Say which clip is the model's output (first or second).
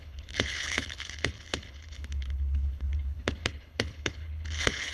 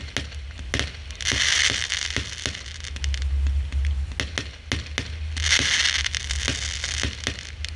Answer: first